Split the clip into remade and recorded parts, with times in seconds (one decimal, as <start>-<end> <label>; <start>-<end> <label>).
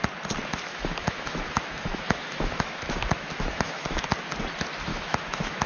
0.0-0.7 recorded; 0.7-4.1 remade; 4.1-4.9 recorded; 4.9-5.7 remade